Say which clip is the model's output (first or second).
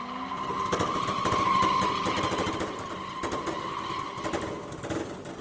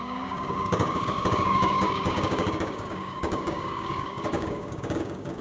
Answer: second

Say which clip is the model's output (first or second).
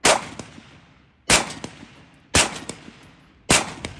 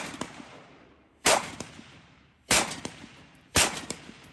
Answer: second